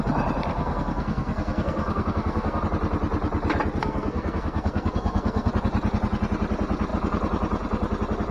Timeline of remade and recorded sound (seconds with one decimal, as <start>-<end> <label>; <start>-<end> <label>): 0.0-0.5 recorded; 0.5-2.6 remade; 2.6-3.8 recorded; 3.8-5.5 remade; 5.5-8.3 recorded